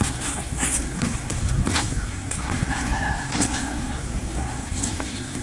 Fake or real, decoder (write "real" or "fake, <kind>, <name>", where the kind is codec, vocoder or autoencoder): fake, codec, SNAC